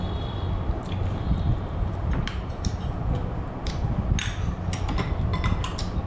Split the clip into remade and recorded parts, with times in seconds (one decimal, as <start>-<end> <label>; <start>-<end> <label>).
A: 0.0-1.5 recorded; 1.5-2.9 remade; 2.9-6.1 recorded